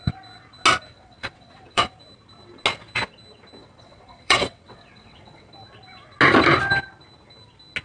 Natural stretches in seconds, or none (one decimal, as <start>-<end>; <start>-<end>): 0.0-0.9; 1.9-3.6; 5.5-7.8